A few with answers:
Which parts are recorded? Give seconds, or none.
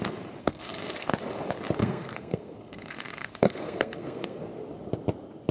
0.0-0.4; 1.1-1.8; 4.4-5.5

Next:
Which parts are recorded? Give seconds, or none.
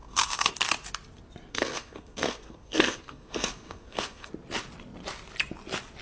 0.5-1.5; 4.3-6.0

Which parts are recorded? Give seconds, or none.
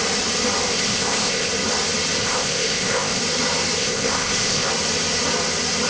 0.0-0.7; 1.5-2.2; 3.2-3.8; 4.7-5.9